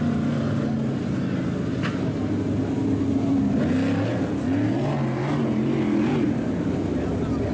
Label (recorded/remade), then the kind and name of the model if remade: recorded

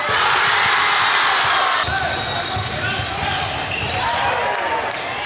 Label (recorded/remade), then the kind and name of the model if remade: recorded